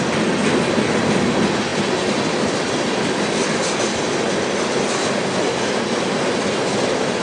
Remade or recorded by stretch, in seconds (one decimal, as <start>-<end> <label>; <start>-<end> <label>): 0.0-7.2 recorded

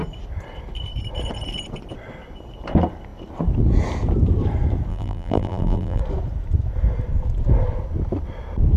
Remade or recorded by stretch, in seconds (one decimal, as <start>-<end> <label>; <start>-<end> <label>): 0.0-4.9 recorded; 4.9-6.0 remade; 6.0-8.8 recorded

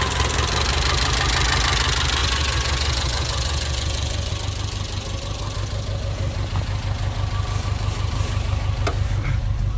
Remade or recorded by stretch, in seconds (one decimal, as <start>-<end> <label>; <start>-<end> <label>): 0.0-2.2 recorded; 2.2-4.3 remade; 4.3-9.8 recorded

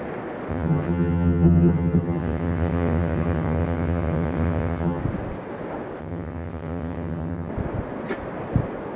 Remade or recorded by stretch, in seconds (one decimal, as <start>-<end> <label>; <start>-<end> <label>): 0.0-0.5 recorded; 0.5-5.0 remade; 5.0-6.0 recorded; 6.0-7.5 remade; 7.5-9.0 recorded

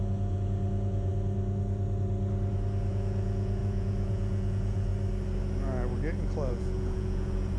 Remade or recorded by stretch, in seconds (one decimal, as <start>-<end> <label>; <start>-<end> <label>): 0.0-1.1 remade; 1.1-2.9 recorded; 2.9-4.9 remade; 4.9-6.5 recorded; 6.5-7.6 remade